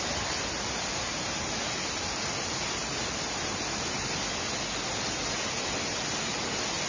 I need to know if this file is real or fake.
real